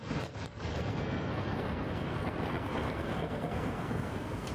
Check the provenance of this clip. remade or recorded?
remade